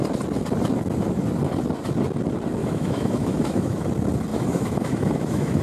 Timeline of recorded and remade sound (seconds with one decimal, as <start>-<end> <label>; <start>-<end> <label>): 0.0-2.6 recorded; 2.6-3.9 remade; 3.9-4.3 recorded; 4.3-5.6 remade